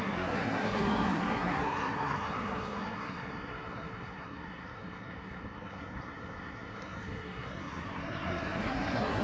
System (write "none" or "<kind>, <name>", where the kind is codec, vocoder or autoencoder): codec, SNAC